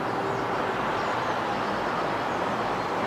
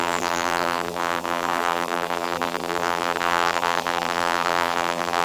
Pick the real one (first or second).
first